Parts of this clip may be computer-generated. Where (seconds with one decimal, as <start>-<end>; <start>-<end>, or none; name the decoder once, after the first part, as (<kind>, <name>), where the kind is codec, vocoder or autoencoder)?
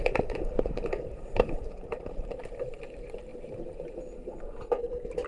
0.0-2.4 (vocoder, BigVGAN v2)